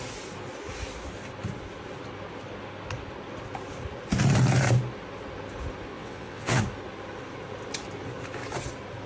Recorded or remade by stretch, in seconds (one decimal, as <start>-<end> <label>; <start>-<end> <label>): 0.0-5.9 recorded; 5.9-6.6 remade; 6.6-9.1 recorded